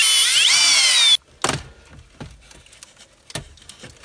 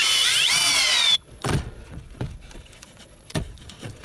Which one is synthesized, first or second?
second